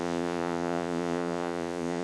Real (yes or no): no